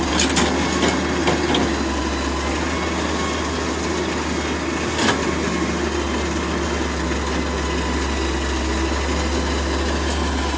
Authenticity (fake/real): real